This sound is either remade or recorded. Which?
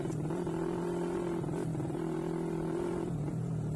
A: remade